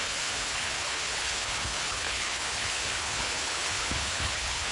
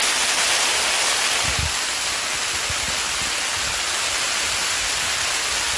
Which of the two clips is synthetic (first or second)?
first